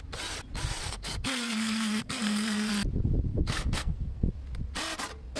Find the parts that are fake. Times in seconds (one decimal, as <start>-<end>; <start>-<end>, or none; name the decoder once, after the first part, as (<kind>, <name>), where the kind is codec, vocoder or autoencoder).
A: 0.8-2.7 (codec, SNAC); 3.3-4.3